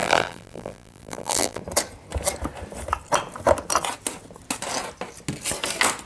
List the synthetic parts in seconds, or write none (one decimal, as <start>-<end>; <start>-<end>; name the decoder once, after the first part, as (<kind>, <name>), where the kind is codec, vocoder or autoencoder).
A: 0.0-1.6 (vocoder, BigVGAN v2)